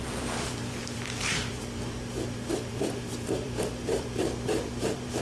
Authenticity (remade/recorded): remade